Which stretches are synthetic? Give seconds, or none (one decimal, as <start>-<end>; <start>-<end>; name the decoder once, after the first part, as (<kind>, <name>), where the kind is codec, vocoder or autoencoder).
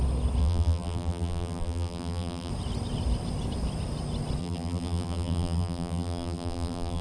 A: 0.4-2.5 (vocoder, BigVGAN v2); 4.4-7.0